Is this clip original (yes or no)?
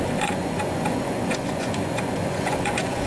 no